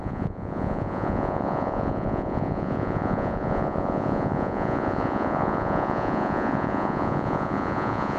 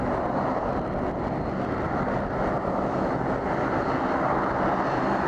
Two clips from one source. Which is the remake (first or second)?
first